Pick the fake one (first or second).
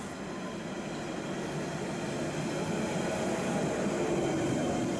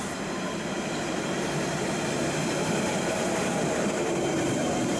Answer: second